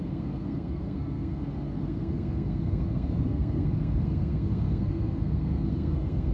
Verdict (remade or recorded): remade